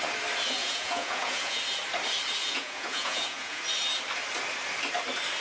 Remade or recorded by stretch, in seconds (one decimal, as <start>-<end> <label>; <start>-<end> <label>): 0.0-0.6 recorded; 0.6-1.6 remade; 1.6-2.4 recorded; 2.4-3.6 remade; 3.6-5.4 recorded